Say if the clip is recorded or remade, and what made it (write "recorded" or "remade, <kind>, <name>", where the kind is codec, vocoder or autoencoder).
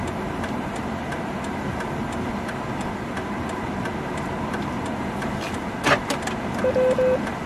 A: recorded